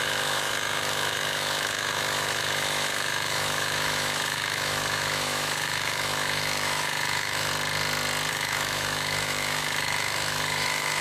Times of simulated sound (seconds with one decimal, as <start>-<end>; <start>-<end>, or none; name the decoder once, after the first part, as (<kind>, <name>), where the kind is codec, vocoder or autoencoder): 0.0-7.5 (autoencoder, DAC-VAE); 8.3-11.0